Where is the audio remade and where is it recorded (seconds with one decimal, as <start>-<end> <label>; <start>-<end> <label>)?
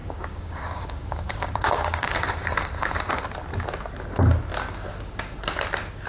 0.0-3.0 remade; 3.0-6.1 recorded